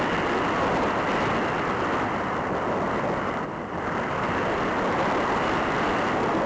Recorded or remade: recorded